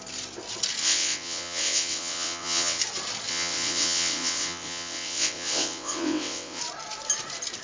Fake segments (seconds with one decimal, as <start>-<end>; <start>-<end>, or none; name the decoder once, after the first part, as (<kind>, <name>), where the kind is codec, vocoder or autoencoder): 0.8-2.8 (vocoder, WaveNeXt); 3.3-6.6